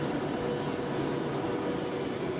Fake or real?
real